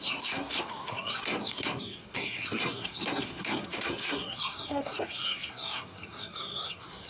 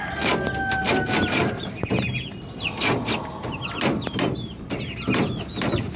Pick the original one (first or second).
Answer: second